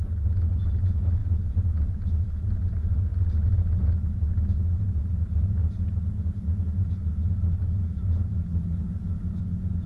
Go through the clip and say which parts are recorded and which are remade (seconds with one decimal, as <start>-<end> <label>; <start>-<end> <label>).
0.0-5.6 remade; 5.6-6.8 recorded; 6.8-8.5 remade; 8.5-9.4 recorded; 9.4-9.9 remade